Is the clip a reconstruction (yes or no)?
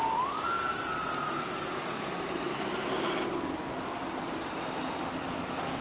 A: no